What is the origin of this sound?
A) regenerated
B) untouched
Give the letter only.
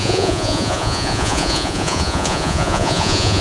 A